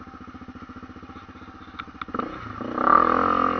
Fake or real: real